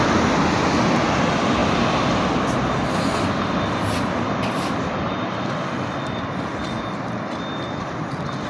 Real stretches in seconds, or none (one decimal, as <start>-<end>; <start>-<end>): 0.0-8.5